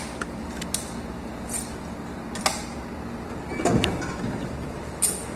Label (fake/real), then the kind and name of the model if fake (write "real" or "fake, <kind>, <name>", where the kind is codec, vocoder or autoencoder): real